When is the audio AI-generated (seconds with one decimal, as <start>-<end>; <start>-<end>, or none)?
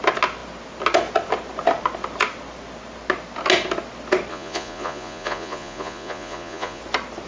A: 4.3-6.8